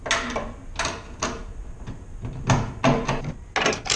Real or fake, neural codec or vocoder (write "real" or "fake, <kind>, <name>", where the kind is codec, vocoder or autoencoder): real